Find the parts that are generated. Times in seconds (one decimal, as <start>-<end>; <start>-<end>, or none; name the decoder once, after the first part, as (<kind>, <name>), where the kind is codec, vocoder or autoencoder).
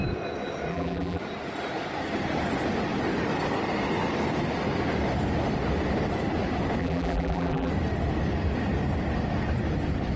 0.7-1.2 (vocoder, BigVGAN v2); 6.8-7.7